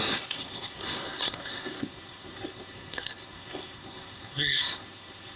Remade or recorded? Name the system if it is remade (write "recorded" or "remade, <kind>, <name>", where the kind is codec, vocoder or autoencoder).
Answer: remade, codec, SNAC